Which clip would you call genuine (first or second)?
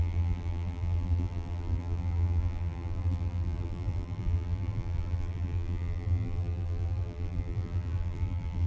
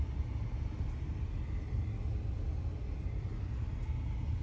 second